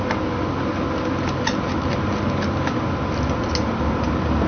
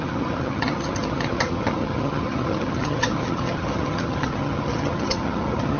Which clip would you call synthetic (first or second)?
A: second